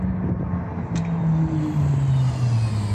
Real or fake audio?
real